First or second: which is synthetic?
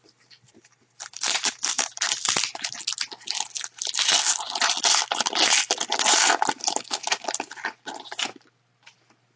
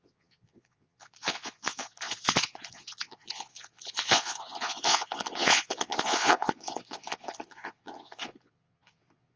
second